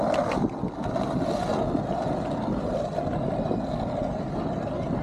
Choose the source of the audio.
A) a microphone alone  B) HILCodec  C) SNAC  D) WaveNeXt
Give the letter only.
A